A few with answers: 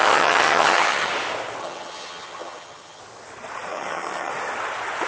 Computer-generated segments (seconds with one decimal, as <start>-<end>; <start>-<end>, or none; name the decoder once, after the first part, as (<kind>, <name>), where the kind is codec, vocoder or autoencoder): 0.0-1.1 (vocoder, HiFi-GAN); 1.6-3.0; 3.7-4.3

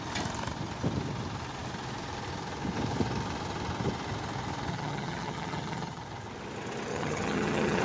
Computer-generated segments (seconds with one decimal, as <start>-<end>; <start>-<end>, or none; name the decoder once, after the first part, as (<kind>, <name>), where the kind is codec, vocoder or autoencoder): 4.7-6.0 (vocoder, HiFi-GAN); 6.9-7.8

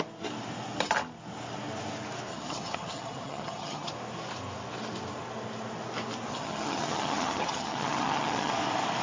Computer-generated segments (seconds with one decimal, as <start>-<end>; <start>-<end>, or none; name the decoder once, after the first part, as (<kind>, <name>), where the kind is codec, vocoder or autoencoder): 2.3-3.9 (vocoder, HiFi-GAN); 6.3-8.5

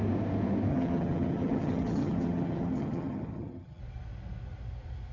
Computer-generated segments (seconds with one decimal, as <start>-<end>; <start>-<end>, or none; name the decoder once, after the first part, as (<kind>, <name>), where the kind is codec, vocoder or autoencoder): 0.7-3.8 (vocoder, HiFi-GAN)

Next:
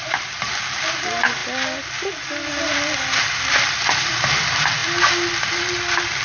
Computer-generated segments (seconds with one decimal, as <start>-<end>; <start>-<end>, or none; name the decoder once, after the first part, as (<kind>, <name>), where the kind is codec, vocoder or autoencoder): none

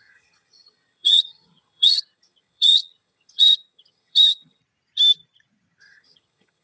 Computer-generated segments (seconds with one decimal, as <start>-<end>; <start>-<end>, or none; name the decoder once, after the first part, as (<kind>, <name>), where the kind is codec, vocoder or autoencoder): 0.0-4.6 (vocoder, HiFi-GAN); 5.8-6.6